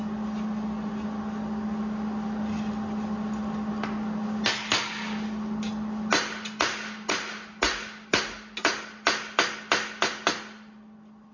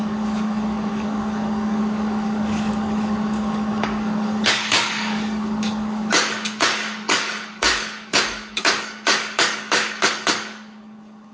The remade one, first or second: second